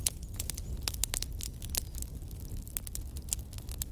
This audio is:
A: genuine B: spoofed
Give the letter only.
A